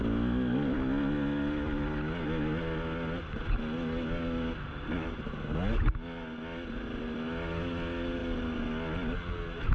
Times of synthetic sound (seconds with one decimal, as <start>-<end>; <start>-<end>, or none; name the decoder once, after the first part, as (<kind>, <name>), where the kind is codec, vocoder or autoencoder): none